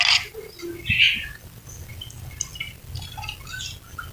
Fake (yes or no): no